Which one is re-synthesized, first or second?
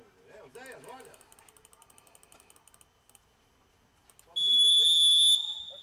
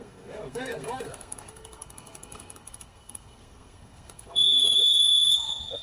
second